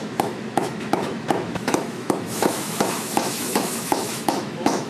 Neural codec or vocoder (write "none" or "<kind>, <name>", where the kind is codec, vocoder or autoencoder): autoencoder, DAC-VAE